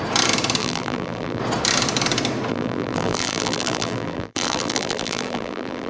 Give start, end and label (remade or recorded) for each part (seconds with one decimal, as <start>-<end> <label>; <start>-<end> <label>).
0.0-0.6 recorded; 0.6-1.4 remade; 1.4-2.5 recorded; 2.5-5.9 remade